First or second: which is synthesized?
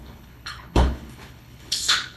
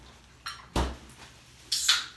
first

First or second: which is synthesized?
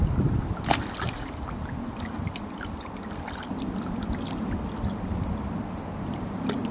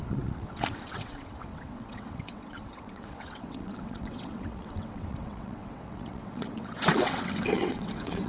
second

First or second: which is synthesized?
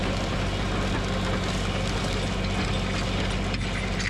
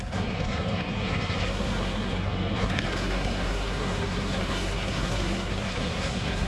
second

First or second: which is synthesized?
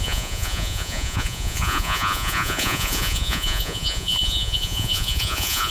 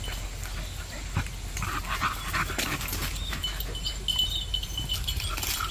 first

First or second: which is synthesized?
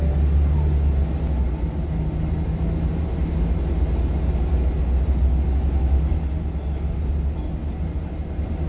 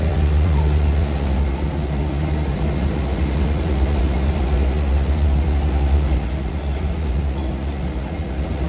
second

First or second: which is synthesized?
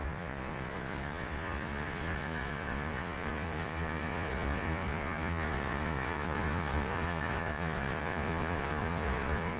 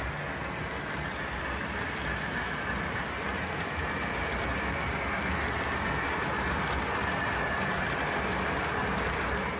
first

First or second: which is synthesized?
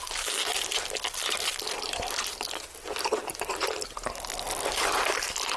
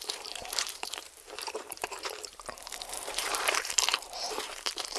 second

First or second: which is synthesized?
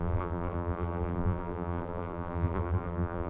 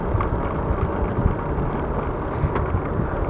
first